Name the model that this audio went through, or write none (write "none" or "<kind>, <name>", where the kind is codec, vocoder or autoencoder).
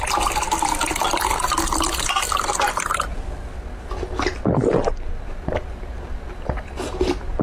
none